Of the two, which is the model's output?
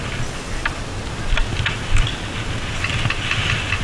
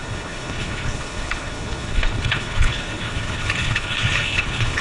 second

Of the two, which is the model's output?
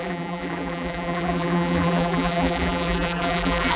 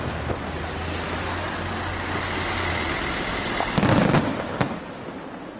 first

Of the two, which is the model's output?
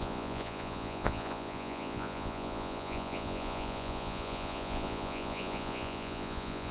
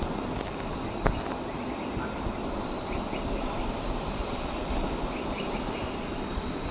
first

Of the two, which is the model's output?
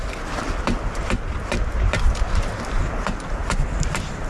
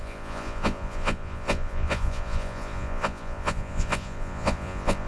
second